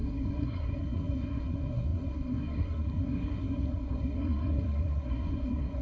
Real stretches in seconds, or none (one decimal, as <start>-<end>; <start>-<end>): none